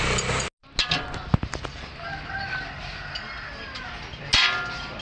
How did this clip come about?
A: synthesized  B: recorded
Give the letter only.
B